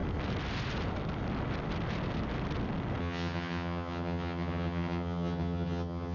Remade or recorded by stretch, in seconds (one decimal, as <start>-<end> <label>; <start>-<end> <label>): 0.0-3.0 recorded; 3.0-6.1 remade